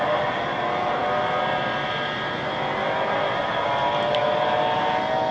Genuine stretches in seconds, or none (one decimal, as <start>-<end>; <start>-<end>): 0.0-5.3